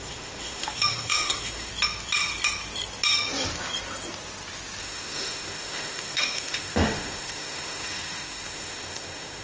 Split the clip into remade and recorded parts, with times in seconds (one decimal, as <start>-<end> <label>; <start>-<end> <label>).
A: 0.0-1.7 remade; 1.7-4.8 recorded; 4.8-9.4 remade